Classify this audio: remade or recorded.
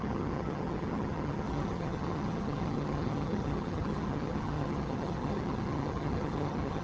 remade